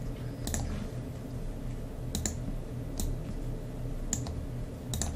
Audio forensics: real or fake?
real